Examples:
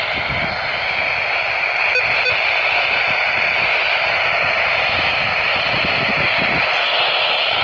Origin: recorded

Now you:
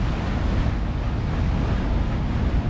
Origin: recorded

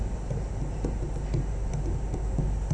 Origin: recorded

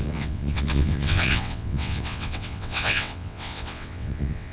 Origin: remade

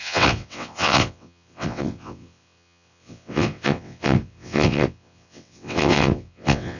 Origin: remade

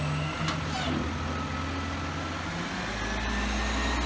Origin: recorded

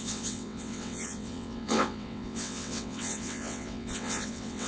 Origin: remade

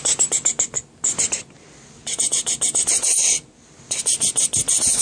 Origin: recorded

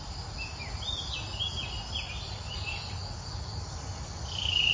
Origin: recorded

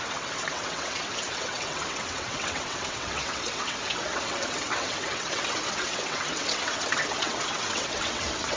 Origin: remade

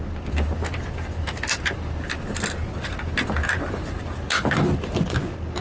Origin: recorded